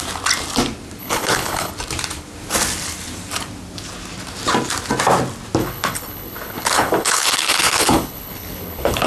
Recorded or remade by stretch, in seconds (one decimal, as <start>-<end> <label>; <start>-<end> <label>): 0.0-1.0 recorded; 1.0-1.7 remade; 1.7-5.6 recorded; 5.6-9.1 remade